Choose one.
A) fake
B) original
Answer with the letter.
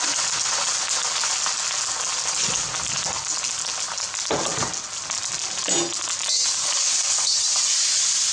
B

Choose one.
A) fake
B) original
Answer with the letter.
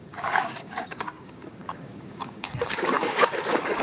A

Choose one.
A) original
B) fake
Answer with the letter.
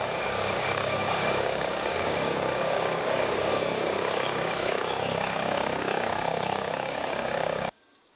B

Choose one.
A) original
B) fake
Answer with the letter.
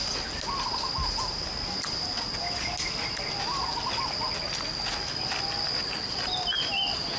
A